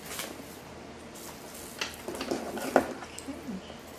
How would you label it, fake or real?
real